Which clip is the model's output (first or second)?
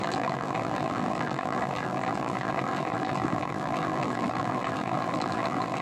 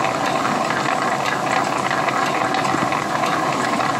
first